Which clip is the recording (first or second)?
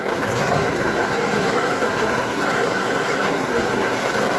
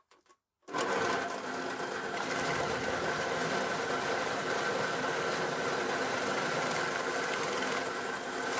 second